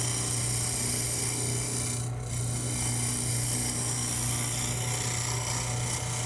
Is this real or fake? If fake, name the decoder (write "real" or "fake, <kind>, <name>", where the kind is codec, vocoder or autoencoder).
real